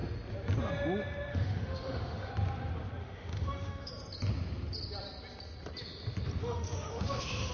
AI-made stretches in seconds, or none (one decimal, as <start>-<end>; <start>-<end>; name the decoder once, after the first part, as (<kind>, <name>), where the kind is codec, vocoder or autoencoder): 1.3-2.3 (autoencoder, DAC-VAE); 3.0-3.9; 6.4-7.5